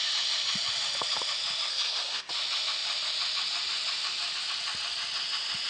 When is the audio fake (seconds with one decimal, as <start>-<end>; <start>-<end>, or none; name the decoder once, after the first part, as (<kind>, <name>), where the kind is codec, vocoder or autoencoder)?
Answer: 1.7-2.3 (codec, SNAC)